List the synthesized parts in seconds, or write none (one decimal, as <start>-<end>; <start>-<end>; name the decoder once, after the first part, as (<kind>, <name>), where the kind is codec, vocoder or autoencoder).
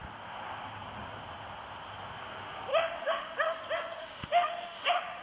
2.7-3.6 (autoencoder, DAC-VAE); 4.0-5.2